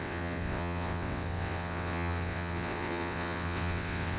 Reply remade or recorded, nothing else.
remade